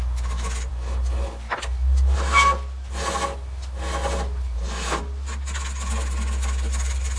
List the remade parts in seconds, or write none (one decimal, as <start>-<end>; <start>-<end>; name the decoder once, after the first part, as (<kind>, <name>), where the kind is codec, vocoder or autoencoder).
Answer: none